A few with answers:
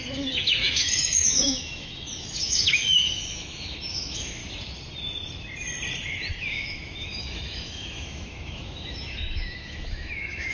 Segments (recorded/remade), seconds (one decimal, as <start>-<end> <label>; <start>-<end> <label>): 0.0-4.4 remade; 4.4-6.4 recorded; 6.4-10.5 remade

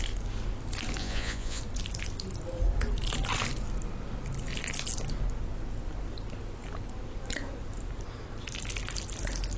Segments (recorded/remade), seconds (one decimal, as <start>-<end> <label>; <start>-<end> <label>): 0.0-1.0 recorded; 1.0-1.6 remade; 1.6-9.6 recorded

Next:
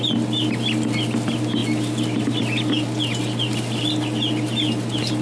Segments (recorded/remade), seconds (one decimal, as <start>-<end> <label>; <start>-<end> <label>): 0.0-5.2 recorded

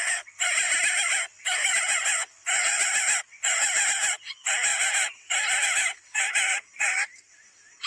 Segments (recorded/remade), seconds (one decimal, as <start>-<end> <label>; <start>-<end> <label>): 0.0-4.7 recorded; 4.7-7.5 remade; 7.5-7.9 recorded

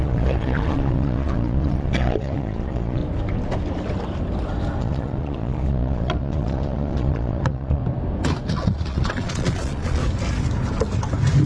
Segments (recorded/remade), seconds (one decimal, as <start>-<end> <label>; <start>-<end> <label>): 0.0-3.0 remade; 3.0-4.8 recorded; 4.8-7.8 remade; 7.8-8.5 recorded; 8.5-10.0 remade; 10.0-11.5 recorded

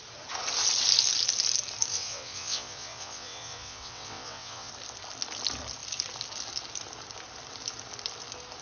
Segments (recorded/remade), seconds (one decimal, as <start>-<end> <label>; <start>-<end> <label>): 0.0-1.9 recorded; 1.9-4.7 remade; 4.7-8.6 recorded

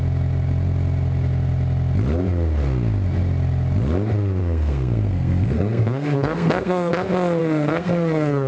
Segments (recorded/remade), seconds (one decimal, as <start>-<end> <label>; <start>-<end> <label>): 0.0-4.4 recorded; 4.4-6.9 remade; 6.9-7.4 recorded; 7.4-8.5 remade

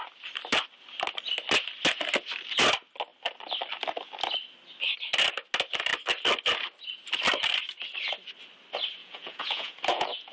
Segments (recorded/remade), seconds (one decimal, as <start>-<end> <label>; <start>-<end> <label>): 0.0-9.0 recorded; 9.0-10.3 remade